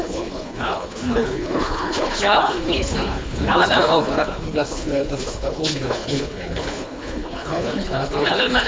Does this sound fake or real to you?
fake